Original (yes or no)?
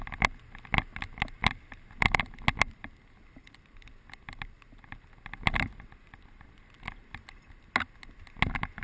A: yes